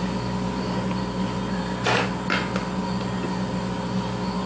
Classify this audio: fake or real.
real